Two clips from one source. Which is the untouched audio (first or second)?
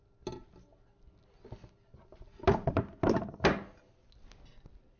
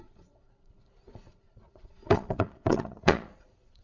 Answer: first